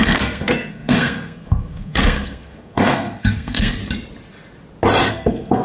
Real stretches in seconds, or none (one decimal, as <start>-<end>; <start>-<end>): 3.8-5.1